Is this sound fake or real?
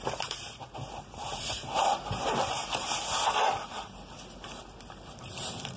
fake